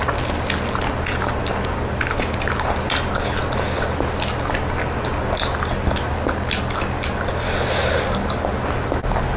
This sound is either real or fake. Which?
real